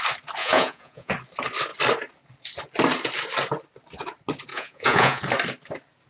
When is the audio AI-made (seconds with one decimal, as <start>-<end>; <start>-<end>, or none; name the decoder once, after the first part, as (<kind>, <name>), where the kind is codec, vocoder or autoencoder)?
0.4-1.1 (vocoder, Vocos); 4.5-5.2